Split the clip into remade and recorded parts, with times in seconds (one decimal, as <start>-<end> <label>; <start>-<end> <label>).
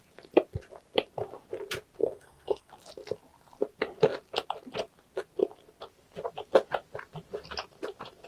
0.0-2.0 recorded; 2.0-2.7 remade; 2.7-8.3 recorded